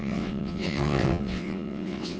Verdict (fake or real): fake